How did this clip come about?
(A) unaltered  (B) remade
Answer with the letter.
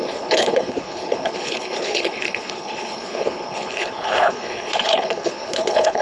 B